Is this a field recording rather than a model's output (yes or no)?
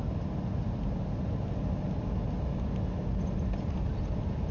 yes